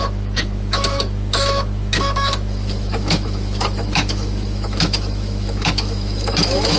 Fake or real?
fake